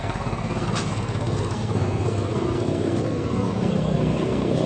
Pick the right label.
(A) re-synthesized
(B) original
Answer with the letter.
A